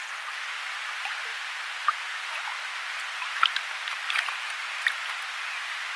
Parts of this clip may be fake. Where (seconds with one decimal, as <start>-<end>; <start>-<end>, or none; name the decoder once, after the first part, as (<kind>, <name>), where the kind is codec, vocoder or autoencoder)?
1.3-2.0 (vocoder, BigVGAN v2)